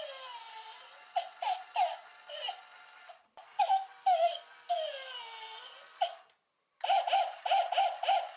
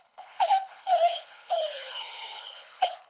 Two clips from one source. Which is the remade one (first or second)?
second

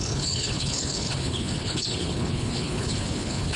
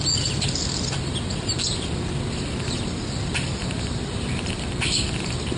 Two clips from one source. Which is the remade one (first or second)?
first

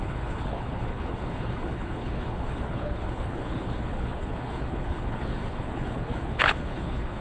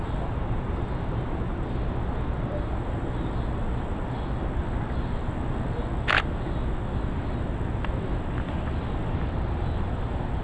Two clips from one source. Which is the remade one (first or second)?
first